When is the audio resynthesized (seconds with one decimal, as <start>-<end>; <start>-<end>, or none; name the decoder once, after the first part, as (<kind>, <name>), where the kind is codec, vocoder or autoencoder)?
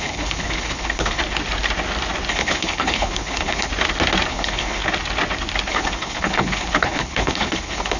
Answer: 0.0-1.2 (codec, HILCodec); 2.3-3.7; 4.3-4.8; 5.7-8.0